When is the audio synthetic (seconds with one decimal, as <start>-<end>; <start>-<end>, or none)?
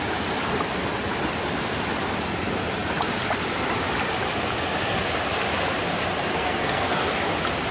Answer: 6.3-7.1